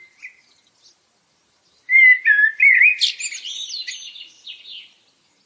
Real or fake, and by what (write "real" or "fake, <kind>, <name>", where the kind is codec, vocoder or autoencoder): real